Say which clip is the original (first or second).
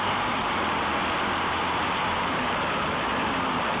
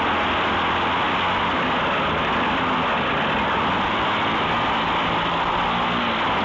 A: second